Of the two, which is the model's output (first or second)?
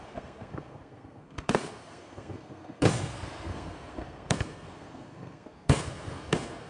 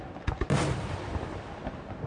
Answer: first